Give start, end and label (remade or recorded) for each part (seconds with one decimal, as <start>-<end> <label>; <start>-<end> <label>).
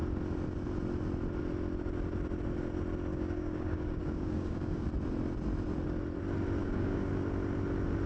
0.0-3.1 recorded; 3.1-4.9 remade; 4.9-6.6 recorded; 6.6-7.1 remade; 7.1-8.1 recorded